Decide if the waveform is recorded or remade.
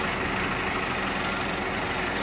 recorded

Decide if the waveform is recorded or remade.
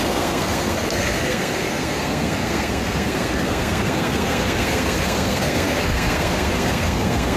remade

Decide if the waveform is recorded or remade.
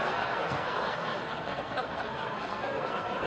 remade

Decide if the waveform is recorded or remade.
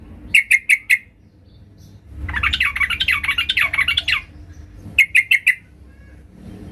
recorded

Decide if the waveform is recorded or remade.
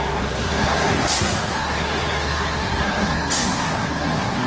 remade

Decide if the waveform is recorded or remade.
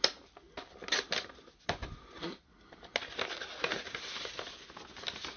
recorded